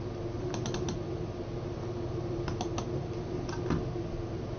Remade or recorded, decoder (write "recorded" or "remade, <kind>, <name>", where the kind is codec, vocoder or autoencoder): recorded